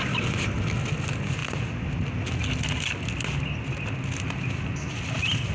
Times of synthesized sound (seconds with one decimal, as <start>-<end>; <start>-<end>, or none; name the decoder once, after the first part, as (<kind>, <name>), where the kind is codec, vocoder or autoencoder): none